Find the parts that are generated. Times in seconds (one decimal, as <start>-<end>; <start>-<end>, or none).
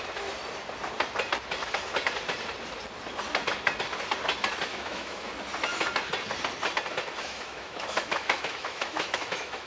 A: 4.7-5.3; 7.2-9.7